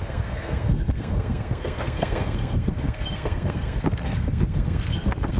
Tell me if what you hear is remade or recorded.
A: remade